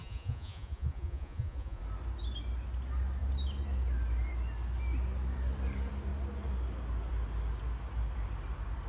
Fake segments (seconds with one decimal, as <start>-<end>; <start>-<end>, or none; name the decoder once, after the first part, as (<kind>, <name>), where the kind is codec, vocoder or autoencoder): 0.0-1.8 (vocoder, Vocos)